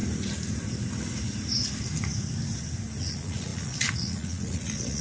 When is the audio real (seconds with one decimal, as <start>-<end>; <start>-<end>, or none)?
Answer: 0.0-3.0